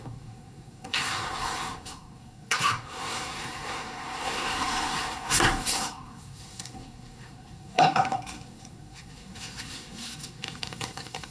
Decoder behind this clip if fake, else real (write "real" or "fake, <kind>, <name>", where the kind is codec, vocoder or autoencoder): fake, codec, SNAC